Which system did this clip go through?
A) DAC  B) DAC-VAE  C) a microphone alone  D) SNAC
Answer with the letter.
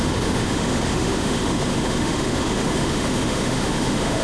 B